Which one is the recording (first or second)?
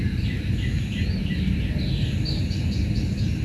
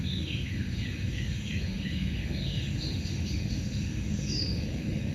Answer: first